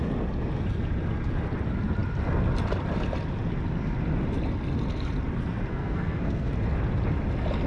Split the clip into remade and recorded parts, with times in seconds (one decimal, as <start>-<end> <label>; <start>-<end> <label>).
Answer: 0.0-5.7 recorded; 5.7-6.5 remade; 6.5-7.7 recorded